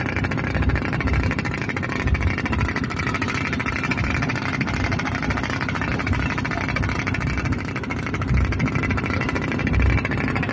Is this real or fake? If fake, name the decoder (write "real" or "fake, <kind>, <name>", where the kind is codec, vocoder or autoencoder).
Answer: real